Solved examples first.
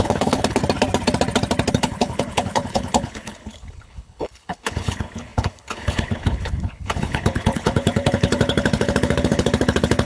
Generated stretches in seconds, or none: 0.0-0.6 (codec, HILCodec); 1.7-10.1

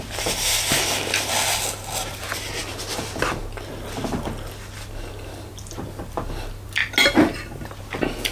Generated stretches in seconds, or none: none